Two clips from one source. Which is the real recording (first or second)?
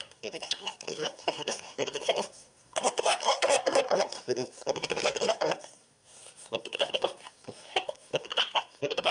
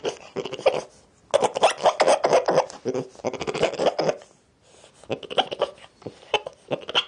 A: second